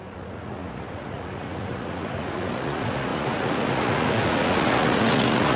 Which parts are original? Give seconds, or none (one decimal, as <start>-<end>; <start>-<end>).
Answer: none